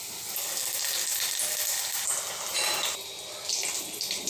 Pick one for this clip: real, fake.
real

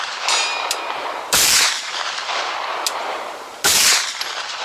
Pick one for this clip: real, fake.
fake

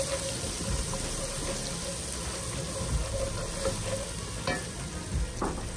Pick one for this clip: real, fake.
real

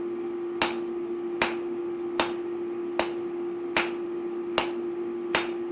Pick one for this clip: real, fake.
real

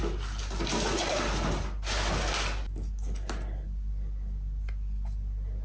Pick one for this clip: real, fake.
real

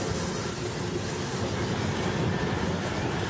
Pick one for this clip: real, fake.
real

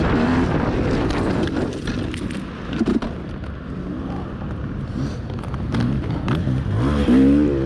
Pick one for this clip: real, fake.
real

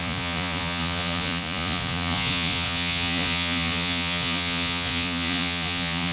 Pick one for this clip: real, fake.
fake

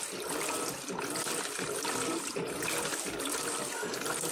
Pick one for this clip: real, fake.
real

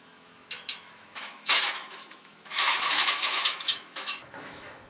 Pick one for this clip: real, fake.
fake